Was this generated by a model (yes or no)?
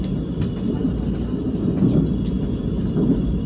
no